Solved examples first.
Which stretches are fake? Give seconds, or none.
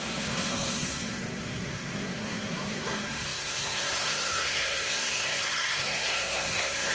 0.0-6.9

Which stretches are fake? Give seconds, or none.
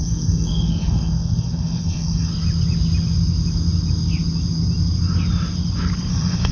0.0-2.3; 6.1-6.5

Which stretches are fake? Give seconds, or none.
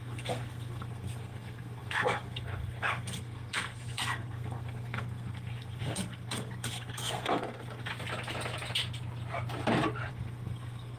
0.0-7.9; 10.1-11.0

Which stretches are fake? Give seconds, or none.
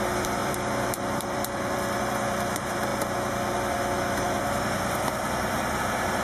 0.0-6.2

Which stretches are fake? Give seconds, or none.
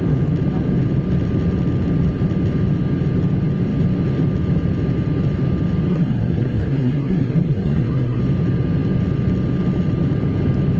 5.9-8.2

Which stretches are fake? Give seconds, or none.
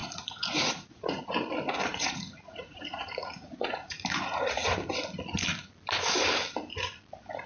0.0-1.2; 1.9-4.4